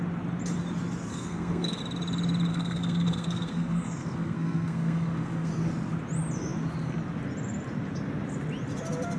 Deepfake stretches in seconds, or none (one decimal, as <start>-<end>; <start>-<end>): 1.1-1.8; 2.5-5.5